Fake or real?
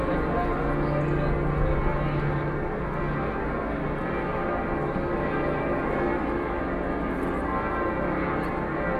real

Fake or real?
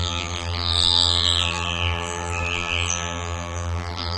fake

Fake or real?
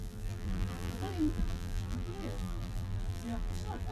fake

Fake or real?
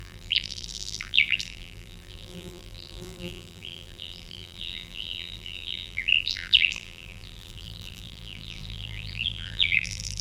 fake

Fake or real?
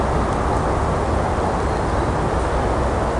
real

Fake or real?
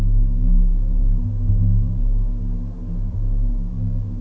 real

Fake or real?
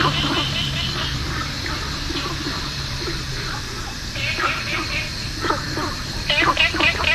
fake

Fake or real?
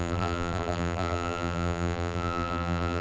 fake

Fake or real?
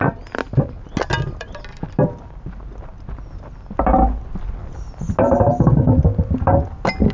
real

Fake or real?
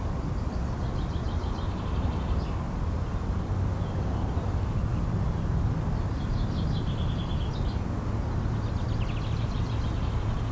real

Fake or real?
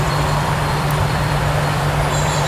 fake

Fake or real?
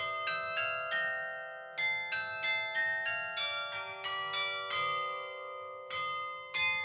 real